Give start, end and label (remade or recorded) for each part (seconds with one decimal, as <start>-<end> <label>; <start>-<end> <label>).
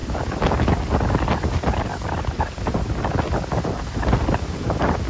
0.0-5.1 recorded